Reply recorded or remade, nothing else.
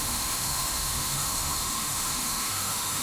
remade